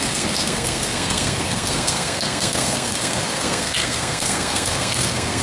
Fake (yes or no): yes